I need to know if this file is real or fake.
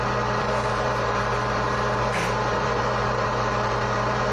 fake